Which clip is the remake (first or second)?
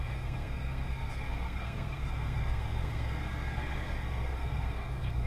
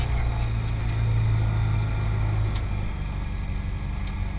first